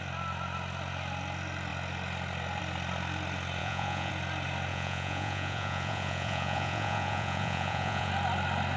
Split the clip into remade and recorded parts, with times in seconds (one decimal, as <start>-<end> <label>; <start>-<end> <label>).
0.0-3.6 recorded; 3.6-4.1 remade; 4.1-4.7 recorded; 4.7-8.1 remade; 8.1-8.8 recorded